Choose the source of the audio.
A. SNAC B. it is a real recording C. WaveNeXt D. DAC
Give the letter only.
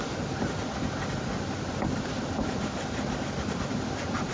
B